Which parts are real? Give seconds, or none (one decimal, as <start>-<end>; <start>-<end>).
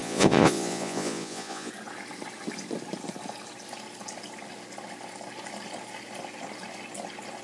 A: 1.7-7.4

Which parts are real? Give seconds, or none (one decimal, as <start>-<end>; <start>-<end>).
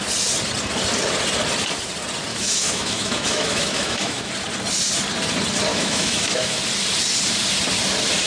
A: 0.0-2.3; 4.3-5.7; 6.6-8.3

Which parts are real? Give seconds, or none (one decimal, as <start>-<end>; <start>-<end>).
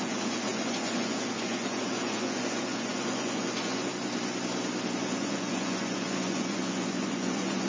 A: 3.9-5.0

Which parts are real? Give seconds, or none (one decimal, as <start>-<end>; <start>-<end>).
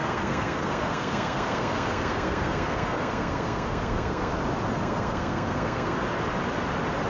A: 4.3-4.7; 6.0-7.1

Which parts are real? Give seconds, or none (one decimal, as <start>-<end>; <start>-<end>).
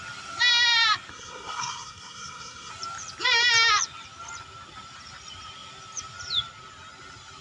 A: 0.0-1.1; 2.7-7.4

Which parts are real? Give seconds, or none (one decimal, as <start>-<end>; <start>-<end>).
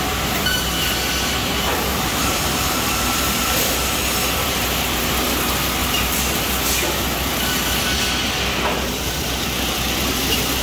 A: 0.0-1.9; 3.4-4.4; 5.1-5.8; 6.4-10.6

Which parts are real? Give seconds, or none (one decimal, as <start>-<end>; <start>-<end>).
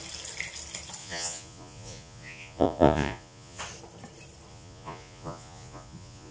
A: 0.0-1.0; 3.6-4.5